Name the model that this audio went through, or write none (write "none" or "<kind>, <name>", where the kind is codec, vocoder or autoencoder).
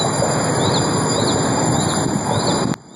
none